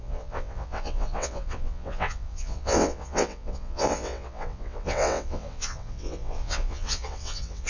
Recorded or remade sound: remade